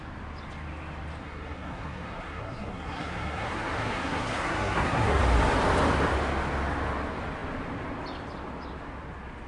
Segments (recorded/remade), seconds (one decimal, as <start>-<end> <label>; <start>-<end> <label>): 0.0-1.2 recorded; 1.2-5.2 remade; 5.2-9.5 recorded